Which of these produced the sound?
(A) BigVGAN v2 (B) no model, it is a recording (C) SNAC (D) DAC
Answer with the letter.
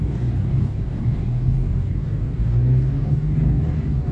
D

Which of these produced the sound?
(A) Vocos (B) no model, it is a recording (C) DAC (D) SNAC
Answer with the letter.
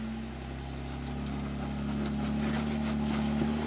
B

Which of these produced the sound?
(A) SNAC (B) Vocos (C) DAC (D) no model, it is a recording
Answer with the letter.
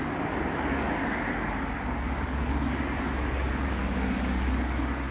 C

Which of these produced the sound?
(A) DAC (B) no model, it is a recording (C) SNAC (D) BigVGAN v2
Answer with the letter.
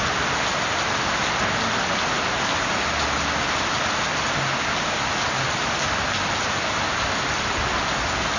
B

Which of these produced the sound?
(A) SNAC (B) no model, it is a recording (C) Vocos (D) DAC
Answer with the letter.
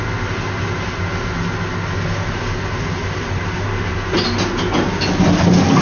B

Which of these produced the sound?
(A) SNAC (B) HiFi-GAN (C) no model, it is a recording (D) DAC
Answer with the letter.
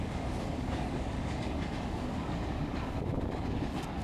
D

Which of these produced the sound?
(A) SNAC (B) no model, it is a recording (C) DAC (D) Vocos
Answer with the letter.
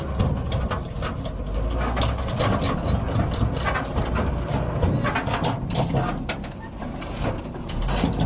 B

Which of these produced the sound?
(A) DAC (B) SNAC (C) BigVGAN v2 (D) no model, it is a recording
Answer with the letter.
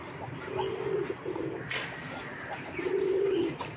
D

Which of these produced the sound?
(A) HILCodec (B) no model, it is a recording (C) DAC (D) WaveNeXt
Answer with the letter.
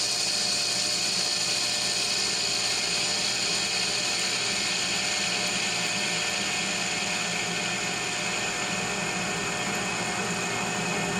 B